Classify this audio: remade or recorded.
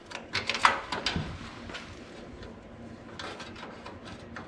recorded